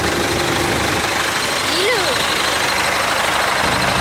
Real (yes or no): yes